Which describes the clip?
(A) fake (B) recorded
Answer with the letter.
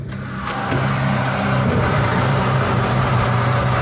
A